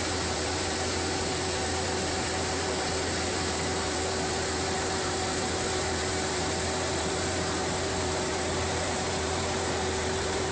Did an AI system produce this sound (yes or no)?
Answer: yes